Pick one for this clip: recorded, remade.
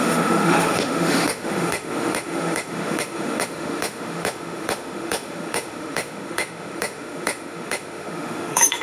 remade